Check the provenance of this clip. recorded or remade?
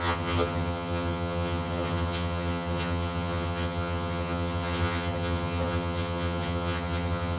remade